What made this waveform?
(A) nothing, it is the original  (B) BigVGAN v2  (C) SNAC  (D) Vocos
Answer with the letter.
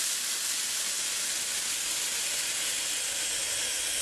A